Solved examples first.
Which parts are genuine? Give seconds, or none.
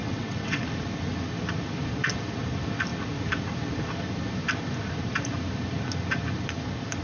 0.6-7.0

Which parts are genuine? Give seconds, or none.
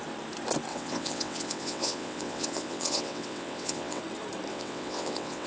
0.0-0.7; 4.0-4.5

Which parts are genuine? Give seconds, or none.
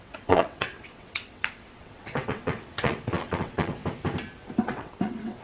3.8-4.6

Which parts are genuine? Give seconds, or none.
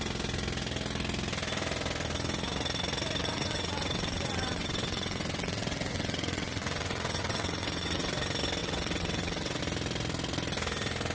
0.0-3.2; 8.1-8.6; 9.6-11.1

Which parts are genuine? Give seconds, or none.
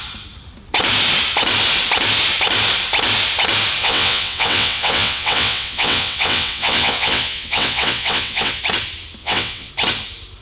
0.0-3.8; 8.6-9.2; 9.7-10.4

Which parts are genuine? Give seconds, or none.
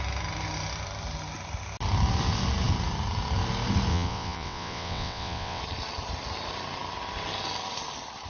0.0-3.9; 5.6-8.3